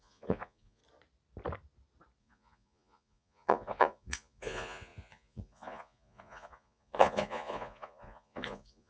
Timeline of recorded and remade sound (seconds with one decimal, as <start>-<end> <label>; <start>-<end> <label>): 0.0-0.8 remade; 0.8-2.2 recorded; 2.2-8.9 remade